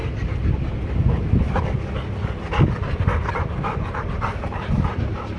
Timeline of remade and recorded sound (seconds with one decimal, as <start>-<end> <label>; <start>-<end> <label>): 0.0-5.4 recorded